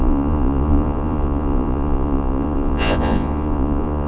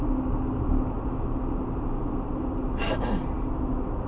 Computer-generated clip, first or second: first